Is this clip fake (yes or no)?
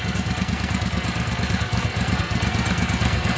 yes